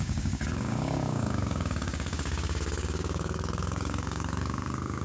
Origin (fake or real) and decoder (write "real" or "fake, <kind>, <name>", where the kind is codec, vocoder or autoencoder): fake, codec, DAC